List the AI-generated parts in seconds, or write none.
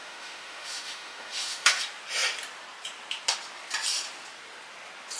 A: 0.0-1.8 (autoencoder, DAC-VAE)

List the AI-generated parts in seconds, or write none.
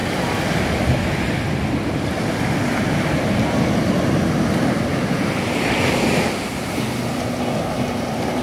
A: none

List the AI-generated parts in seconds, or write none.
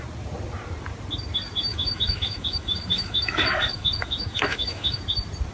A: 1.7-5.0 (autoencoder, DAC-VAE)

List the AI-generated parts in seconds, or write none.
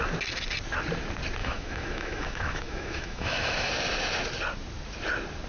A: 1.4-3.7 (autoencoder, DAC-VAE)